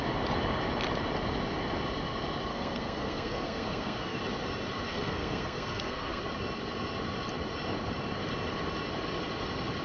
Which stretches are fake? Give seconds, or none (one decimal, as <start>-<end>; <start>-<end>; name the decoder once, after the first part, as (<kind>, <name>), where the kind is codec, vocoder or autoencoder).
2.5-4.2 (codec, SNAC); 4.9-6.2